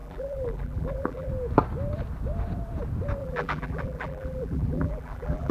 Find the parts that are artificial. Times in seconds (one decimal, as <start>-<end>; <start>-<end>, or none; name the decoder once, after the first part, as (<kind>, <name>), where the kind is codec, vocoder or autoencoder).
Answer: 0.0-1.3 (vocoder, BigVGAN v2); 3.2-5.5